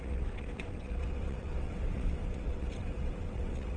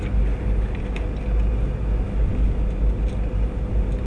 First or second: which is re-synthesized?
first